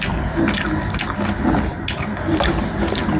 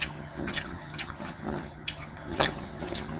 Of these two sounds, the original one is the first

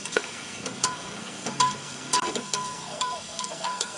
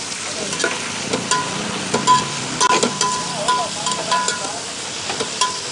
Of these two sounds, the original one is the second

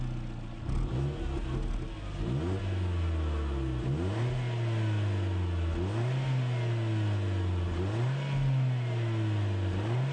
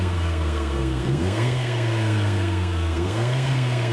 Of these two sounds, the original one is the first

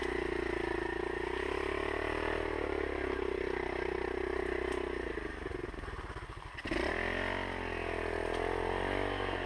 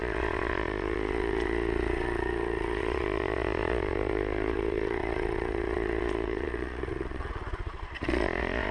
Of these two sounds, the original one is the first